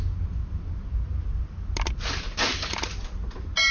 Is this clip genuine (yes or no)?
yes